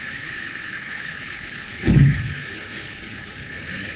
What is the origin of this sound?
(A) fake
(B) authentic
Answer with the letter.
A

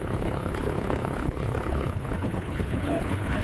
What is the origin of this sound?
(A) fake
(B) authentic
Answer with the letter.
A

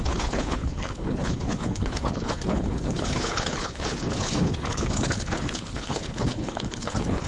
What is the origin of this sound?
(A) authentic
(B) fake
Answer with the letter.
B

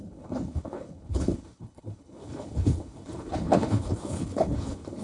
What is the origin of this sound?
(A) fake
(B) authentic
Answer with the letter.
A